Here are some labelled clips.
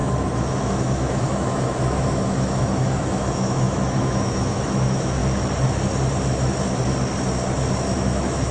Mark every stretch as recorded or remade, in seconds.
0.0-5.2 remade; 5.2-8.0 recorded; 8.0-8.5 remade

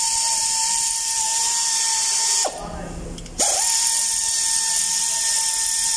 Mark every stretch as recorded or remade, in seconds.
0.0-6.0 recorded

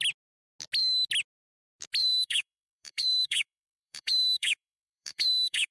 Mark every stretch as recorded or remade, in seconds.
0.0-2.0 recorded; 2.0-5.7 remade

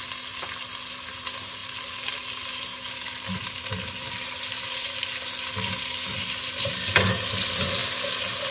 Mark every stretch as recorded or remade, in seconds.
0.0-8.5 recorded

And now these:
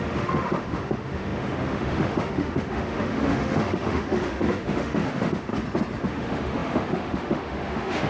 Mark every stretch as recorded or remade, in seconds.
0.0-5.5 remade; 5.5-6.0 recorded; 6.0-8.1 remade

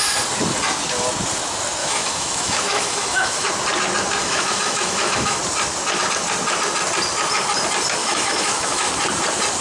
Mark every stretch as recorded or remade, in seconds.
0.0-1.8 recorded; 1.8-3.5 remade; 3.5-4.2 recorded; 4.2-5.4 remade; 5.4-8.0 recorded; 8.0-8.9 remade; 8.9-9.6 recorded

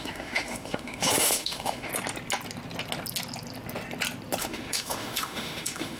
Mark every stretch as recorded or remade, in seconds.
0.0-1.9 remade; 1.9-4.4 recorded; 4.4-6.0 remade